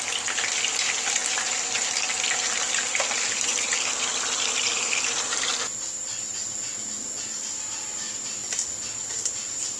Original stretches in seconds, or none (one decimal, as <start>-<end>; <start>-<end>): 4.1-4.7; 5.5-7.5; 8.4-9.1